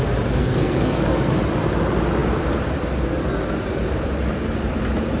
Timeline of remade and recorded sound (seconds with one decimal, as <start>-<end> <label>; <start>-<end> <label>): 0.0-0.4 recorded; 0.4-1.3 remade; 1.3-5.2 recorded